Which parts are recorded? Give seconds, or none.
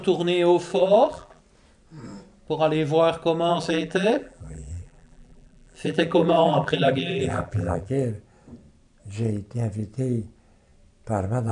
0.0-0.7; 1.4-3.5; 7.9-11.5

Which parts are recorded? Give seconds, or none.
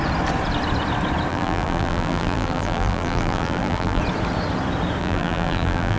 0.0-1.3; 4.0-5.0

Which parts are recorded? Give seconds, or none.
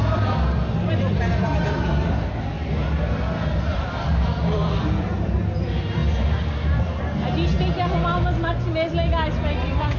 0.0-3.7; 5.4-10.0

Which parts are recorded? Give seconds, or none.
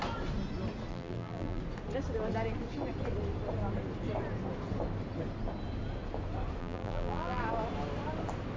0.0-0.9; 1.6-6.6; 7.4-8.6